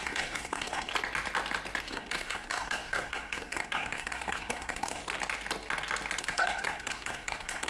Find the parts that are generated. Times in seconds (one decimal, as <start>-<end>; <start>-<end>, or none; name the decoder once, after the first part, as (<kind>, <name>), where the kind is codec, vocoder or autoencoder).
0.0-0.9 (codec, SNAC); 1.8-5.0; 6.2-7.7